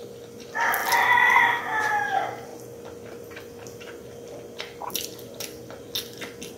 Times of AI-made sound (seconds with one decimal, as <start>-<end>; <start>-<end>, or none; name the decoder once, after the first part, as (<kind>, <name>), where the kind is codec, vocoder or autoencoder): none